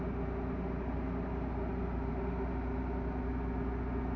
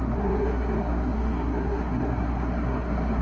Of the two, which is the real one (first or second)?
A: first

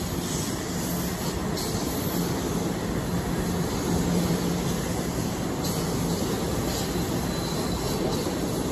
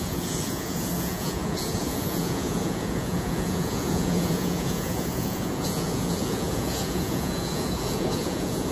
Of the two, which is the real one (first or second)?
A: first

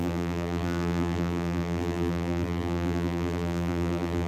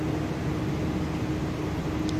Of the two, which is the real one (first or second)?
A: second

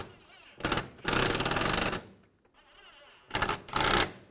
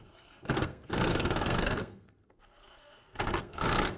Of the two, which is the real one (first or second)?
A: first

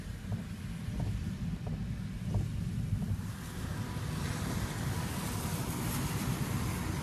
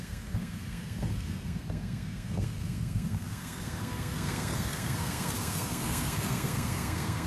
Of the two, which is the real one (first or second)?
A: first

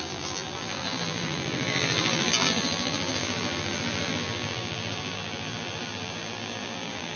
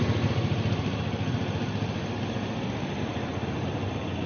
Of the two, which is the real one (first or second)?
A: second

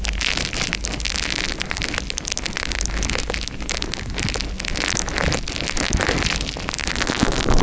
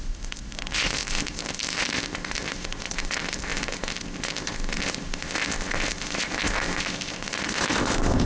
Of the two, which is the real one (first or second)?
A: first